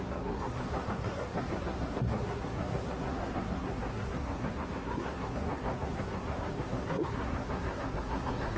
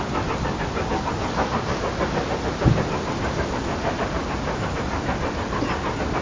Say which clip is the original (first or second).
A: second